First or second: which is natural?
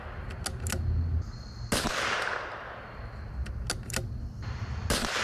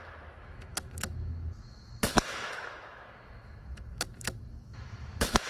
first